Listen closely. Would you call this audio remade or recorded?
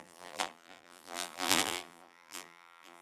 remade